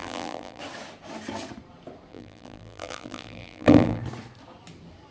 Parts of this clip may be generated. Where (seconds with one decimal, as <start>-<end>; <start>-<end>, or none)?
0.0-0.6; 2.1-4.0